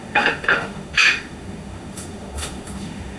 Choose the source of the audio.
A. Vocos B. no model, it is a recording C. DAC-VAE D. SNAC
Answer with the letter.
C